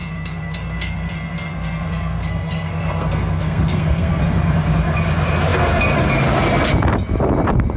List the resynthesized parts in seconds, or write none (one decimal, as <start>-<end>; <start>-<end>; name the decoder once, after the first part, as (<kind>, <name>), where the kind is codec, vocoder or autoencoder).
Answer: 0.0-4.2 (codec, SNAC)